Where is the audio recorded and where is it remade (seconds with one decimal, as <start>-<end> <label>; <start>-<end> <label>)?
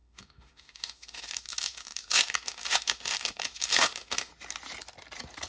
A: 0.0-4.3 remade; 4.3-5.5 recorded